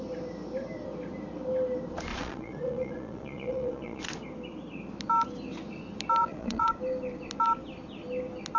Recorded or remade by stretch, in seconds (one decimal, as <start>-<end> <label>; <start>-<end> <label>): 0.0-2.1 recorded; 2.1-4.0 remade; 4.0-6.2 recorded; 6.2-6.7 remade; 6.7-8.6 recorded